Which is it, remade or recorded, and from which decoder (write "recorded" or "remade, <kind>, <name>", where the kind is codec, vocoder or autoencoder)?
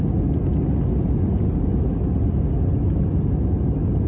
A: recorded